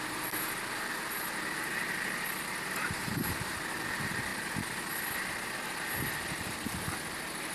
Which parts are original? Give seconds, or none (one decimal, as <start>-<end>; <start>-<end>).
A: 0.0-7.5